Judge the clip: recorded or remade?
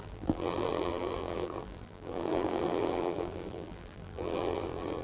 remade